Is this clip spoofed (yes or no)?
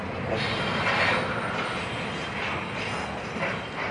no